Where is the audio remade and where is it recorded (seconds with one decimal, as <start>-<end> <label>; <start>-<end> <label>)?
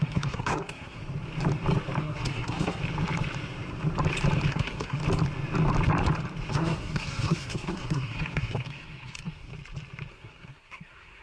0.0-1.0 remade; 1.0-2.0 recorded; 2.0-2.8 remade; 2.8-4.5 recorded; 4.5-5.0 remade; 5.0-6.5 recorded; 6.5-9.5 remade; 9.5-10.1 recorded; 10.1-11.2 remade